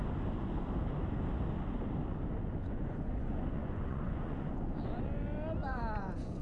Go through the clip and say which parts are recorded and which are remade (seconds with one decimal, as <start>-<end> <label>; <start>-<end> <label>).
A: 0.0-2.6 recorded; 2.6-5.2 remade; 5.2-5.7 recorded; 5.7-6.4 remade